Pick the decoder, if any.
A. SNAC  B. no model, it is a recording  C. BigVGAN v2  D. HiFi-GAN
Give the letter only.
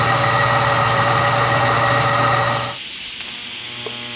B